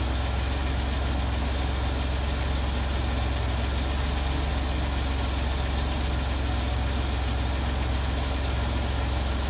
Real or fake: real